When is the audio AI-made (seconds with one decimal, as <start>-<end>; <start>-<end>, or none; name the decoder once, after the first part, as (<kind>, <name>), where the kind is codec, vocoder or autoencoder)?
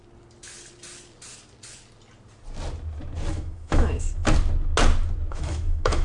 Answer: 3.3-4.2 (autoencoder, DAC-VAE); 5.3-6.0